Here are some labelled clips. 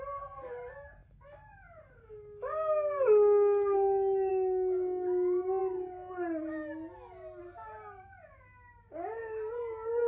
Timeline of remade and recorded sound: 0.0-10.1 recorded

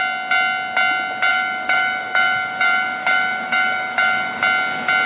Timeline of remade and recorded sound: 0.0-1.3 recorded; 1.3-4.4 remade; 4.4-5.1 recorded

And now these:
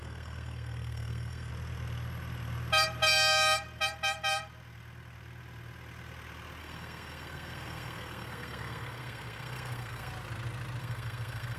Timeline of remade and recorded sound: 0.0-1.5 remade; 1.5-6.6 recorded; 6.6-10.1 remade; 10.1-10.8 recorded; 10.8-11.6 remade

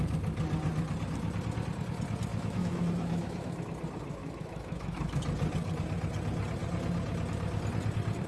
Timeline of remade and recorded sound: 0.0-2.3 recorded; 2.3-3.6 remade; 3.6-4.2 recorded; 4.2-5.2 remade; 5.2-8.3 recorded

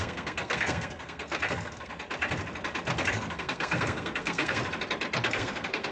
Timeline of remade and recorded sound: 0.0-1.9 remade; 1.9-3.1 recorded; 3.1-4.6 remade; 4.6-5.2 recorded; 5.2-5.9 remade